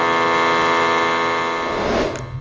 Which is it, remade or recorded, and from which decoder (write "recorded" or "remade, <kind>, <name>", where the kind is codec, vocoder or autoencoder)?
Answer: recorded